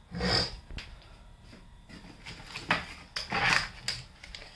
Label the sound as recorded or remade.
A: recorded